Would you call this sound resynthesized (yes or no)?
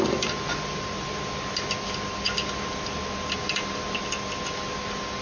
no